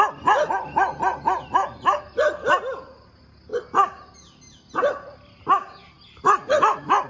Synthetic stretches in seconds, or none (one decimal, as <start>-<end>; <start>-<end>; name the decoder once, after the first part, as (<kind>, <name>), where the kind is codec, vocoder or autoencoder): none